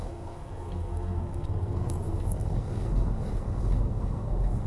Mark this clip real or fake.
fake